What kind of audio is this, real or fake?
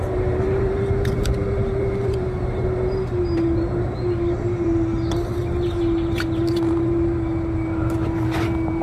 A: fake